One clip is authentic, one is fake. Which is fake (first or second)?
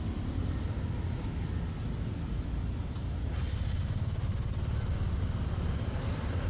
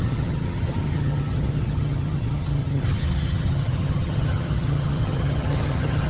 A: second